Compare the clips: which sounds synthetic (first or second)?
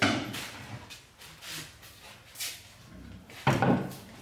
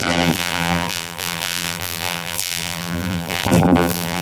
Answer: second